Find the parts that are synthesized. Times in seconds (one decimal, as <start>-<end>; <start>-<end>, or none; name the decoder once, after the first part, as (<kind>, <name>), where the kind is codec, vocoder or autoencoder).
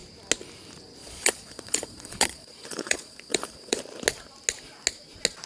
1.0-3.8 (vocoder, Vocos)